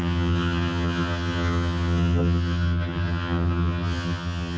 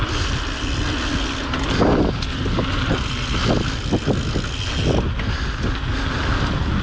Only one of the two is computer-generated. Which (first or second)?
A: first